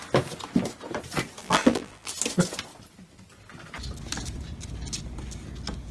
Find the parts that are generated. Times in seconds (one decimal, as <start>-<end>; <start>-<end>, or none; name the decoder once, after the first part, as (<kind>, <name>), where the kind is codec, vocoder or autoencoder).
1.4-2.1 (vocoder, BigVGAN v2)